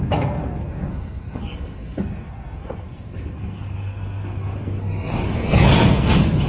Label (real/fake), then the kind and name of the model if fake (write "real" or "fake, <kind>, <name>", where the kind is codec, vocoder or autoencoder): fake, codec, SNAC